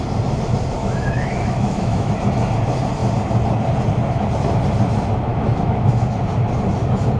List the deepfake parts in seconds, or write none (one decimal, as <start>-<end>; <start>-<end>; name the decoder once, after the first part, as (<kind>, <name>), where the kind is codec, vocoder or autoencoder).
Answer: 0.8-2.1 (autoencoder, DAC-VAE); 5.3-6.1